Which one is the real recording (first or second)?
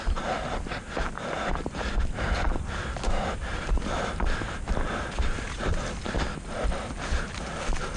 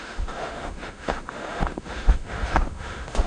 first